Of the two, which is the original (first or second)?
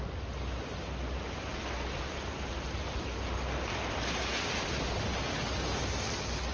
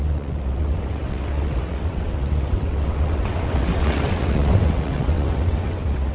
first